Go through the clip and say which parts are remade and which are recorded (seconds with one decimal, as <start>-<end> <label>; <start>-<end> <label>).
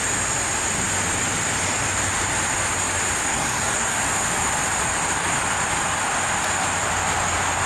0.0-3.3 recorded; 3.3-4.0 remade; 4.0-7.7 recorded